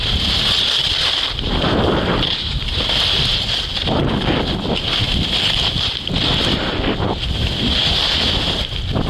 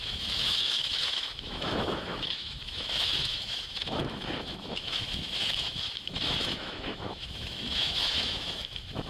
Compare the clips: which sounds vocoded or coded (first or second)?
second